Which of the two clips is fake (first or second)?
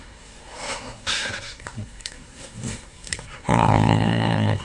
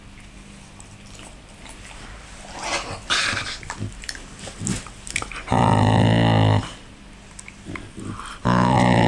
first